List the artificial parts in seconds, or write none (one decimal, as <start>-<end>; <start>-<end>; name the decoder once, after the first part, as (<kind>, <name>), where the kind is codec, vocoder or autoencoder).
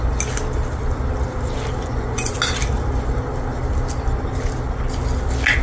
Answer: 1.8-2.3 (vocoder, Vocos)